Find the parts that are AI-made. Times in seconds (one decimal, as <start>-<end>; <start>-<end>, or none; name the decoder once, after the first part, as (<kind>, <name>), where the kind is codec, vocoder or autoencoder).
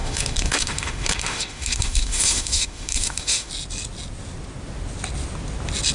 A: 0.0-3.5 (autoencoder, DAC-VAE)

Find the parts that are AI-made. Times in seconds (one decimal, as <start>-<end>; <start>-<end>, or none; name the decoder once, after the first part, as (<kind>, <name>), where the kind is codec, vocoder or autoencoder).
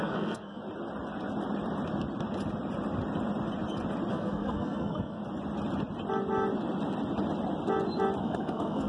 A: 0.0-0.6 (codec, SNAC); 4.1-5.2; 8.2-8.9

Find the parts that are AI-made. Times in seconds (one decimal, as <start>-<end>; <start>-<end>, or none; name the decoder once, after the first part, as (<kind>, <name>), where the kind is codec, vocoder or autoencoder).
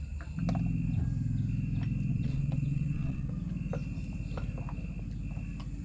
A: 2.1-3.3 (vocoder, WaveNeXt)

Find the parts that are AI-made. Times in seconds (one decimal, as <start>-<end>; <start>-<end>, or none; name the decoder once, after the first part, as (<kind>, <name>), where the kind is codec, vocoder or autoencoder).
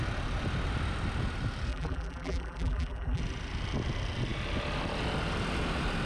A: 1.7-3.2 (vocoder, BigVGAN v2)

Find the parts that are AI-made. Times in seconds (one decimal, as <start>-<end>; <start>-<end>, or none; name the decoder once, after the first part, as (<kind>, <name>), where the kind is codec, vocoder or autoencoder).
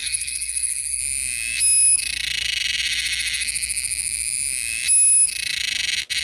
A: 0.0-1.0 (codec, SNAC)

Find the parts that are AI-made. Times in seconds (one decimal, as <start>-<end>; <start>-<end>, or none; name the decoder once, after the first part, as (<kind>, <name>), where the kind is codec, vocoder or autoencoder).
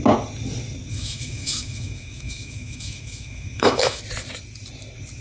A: 0.9-4.0 (autoencoder, DAC-VAE)